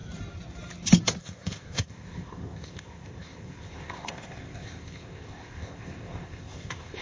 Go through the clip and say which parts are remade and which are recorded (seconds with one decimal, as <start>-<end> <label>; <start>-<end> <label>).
0.0-1.2 recorded; 1.2-7.0 remade